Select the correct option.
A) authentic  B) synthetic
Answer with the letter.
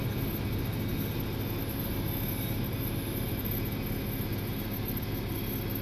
A